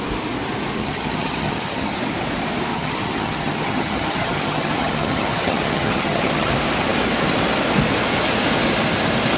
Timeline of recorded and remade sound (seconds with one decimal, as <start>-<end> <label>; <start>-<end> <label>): 0.0-0.8 recorded; 0.8-2.0 remade; 2.0-2.7 recorded; 2.7-6.5 remade; 6.5-9.4 recorded